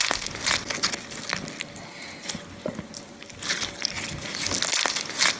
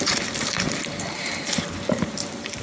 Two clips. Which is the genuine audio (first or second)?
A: first